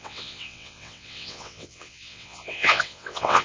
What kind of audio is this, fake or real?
fake